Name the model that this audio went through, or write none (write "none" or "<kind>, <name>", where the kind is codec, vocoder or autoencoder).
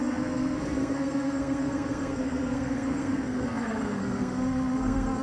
codec, SNAC